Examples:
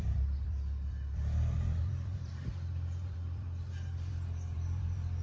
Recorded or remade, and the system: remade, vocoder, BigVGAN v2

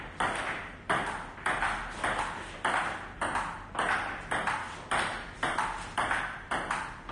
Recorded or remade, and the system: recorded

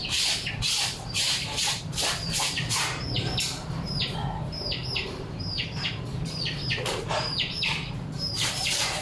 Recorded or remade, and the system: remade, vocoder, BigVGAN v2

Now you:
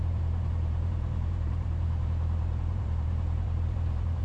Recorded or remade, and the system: remade, vocoder, BigVGAN v2